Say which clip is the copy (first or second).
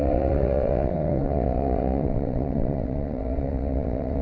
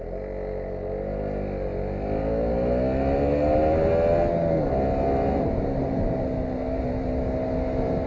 first